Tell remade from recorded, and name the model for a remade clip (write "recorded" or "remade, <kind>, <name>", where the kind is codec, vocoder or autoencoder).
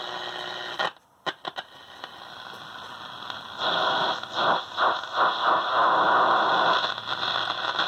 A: recorded